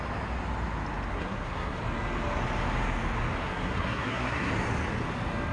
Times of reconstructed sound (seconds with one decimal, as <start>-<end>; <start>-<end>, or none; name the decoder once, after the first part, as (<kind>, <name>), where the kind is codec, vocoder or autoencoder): 1.1-1.8 (codec, SNAC); 3.4-4.5